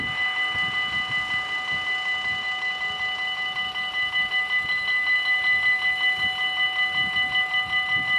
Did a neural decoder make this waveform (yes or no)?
no